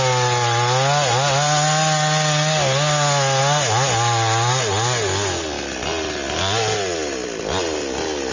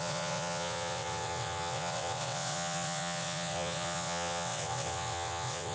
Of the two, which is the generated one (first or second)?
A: second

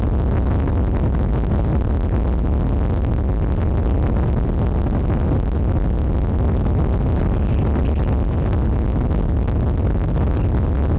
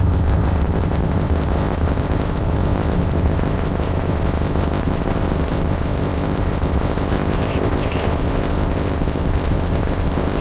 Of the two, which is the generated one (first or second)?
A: second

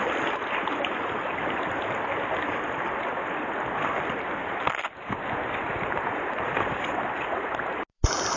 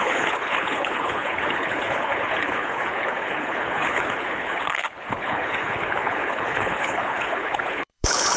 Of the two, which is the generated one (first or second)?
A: second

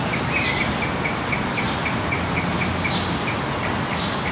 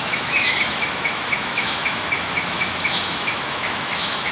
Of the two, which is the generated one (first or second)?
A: second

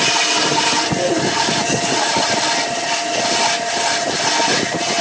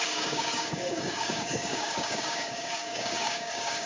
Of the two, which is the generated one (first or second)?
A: second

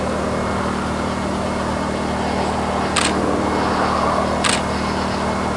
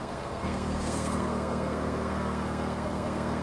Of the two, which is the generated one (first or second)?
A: second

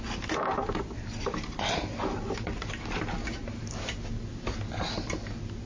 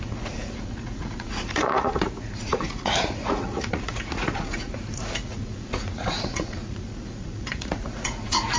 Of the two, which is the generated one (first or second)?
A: second